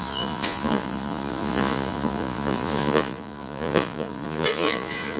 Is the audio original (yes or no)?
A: no